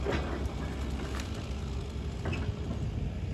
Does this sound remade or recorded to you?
recorded